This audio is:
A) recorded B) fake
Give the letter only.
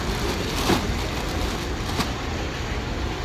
A